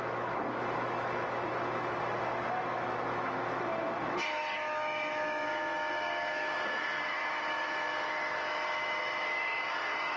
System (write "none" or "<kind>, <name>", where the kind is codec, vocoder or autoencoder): autoencoder, DAC-VAE